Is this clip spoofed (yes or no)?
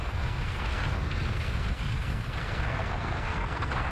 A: yes